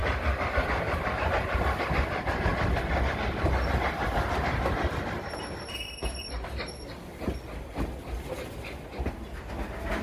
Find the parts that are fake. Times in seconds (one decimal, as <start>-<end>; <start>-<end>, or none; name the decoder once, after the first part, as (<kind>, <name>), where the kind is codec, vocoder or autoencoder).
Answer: none